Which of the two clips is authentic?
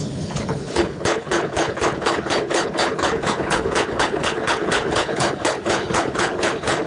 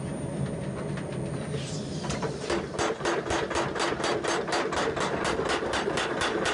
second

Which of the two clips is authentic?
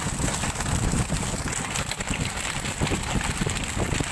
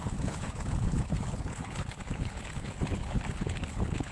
first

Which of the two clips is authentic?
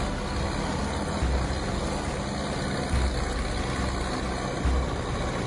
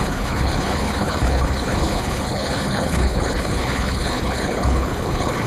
first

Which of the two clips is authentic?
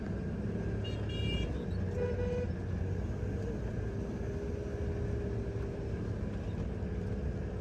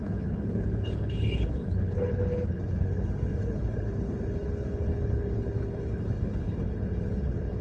first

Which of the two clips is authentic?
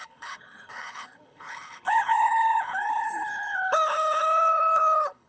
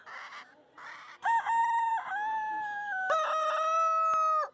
second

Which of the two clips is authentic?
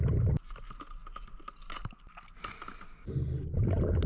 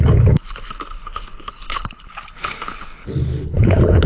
first